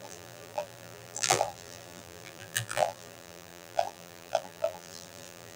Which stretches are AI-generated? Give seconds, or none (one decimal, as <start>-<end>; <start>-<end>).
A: 0.0-5.6